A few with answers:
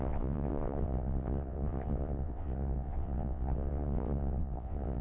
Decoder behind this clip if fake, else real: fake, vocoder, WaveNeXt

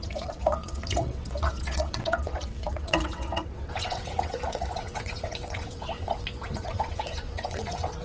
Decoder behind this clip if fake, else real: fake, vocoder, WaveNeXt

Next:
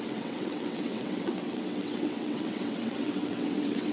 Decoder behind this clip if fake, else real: fake, vocoder, WaveNeXt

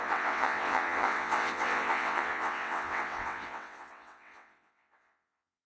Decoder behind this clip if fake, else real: fake, vocoder, WaveNeXt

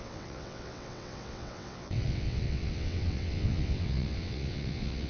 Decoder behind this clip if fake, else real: fake, vocoder, WaveNeXt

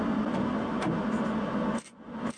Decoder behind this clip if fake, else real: real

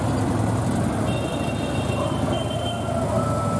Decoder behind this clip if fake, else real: real